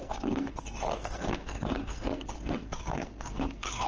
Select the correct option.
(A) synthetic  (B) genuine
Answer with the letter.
A